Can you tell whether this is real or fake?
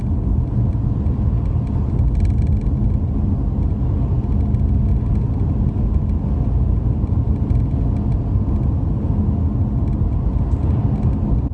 real